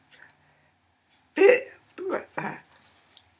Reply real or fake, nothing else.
real